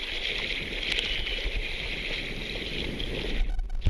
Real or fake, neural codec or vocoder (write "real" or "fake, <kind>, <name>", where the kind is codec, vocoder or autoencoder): real